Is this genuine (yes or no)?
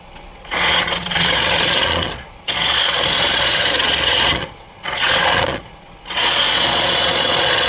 no